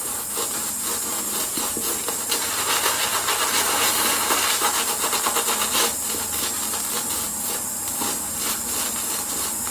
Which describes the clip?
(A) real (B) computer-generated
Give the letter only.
A